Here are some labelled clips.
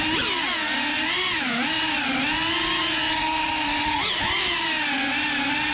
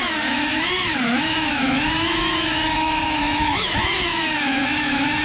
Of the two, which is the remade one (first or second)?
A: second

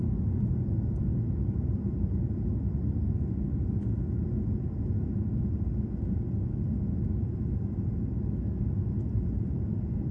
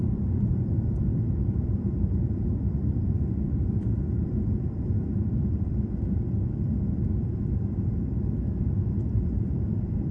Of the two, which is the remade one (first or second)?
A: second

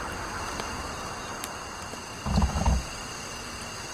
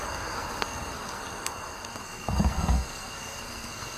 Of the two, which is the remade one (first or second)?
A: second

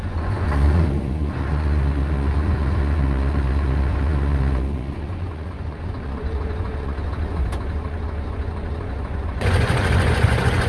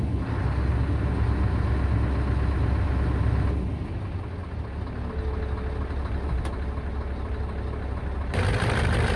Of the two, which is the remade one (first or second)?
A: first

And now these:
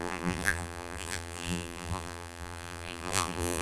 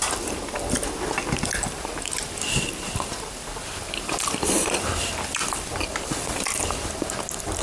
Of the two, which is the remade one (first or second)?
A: first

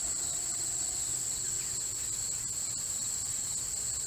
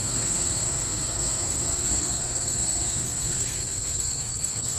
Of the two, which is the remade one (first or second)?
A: second